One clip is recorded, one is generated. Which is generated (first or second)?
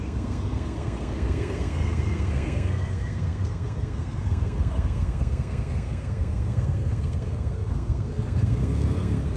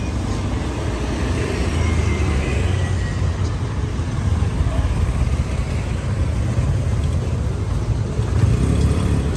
first